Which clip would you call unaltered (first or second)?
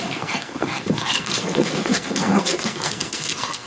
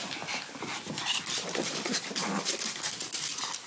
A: second